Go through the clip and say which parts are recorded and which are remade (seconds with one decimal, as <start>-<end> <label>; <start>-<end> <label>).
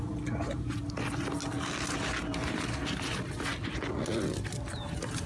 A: 0.0-5.3 recorded